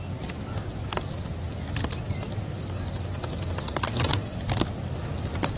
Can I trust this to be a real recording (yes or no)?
yes